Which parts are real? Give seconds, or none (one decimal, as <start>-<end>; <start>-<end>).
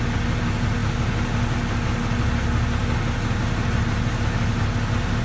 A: 0.0-5.2